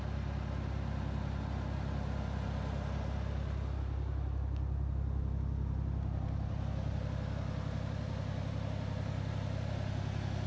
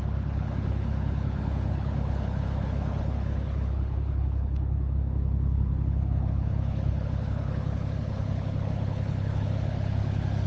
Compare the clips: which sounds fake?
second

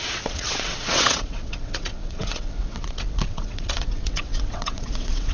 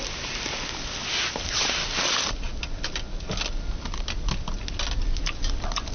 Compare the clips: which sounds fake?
first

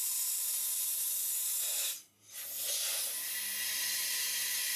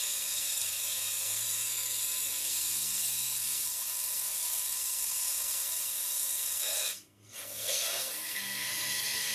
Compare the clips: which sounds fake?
second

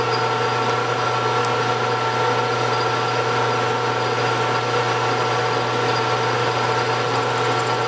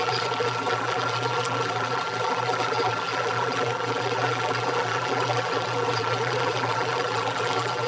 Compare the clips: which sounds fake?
second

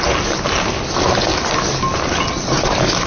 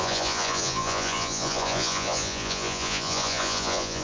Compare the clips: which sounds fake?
second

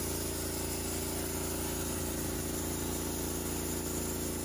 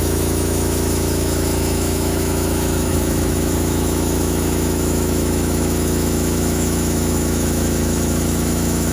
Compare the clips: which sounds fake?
second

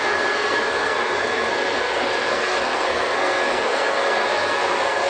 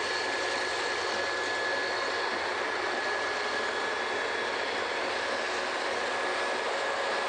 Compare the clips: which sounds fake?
first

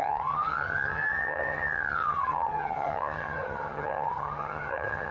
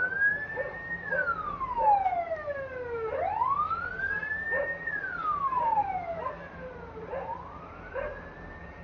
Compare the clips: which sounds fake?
first